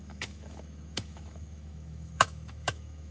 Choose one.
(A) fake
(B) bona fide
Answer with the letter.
A